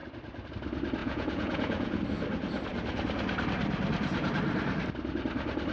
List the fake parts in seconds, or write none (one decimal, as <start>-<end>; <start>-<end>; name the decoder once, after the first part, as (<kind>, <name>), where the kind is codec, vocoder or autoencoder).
1.0-2.0 (vocoder, Vocos)